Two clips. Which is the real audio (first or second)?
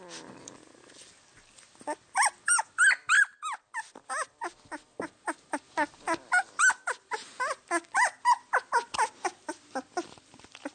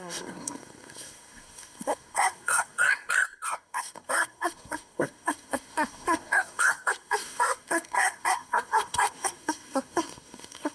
first